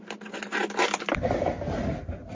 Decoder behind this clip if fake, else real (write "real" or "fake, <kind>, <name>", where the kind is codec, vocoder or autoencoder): real